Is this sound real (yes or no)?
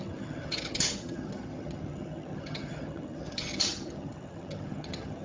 no